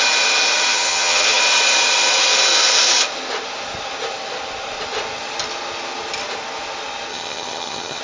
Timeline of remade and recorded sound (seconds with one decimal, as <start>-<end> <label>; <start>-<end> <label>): 0.0-0.7 recorded; 0.7-1.4 remade; 1.4-7.1 recorded; 7.1-8.0 remade

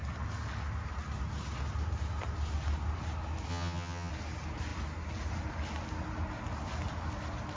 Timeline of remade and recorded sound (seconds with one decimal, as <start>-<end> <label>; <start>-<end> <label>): 0.0-3.5 recorded; 3.5-4.1 remade; 4.1-7.6 recorded

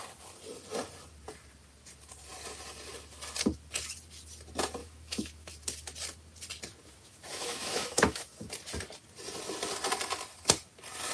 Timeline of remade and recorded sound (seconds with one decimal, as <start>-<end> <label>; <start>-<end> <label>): 0.0-4.8 recorded; 4.8-5.5 remade; 5.5-6.8 recorded; 6.8-8.5 remade; 8.5-11.1 recorded

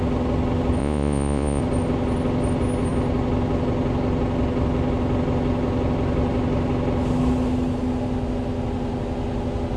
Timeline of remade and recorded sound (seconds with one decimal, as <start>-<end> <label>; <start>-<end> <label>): 0.0-0.8 recorded; 0.8-1.6 remade; 1.6-9.8 recorded